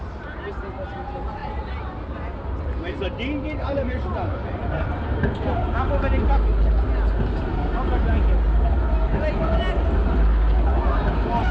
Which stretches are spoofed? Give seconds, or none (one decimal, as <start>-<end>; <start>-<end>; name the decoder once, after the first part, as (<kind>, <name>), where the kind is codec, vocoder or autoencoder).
0.0-0.6 (vocoder, BigVGAN v2); 1.4-2.0